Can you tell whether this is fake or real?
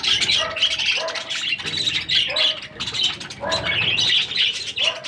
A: real